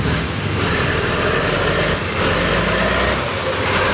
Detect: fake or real real